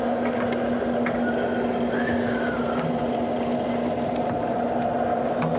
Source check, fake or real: real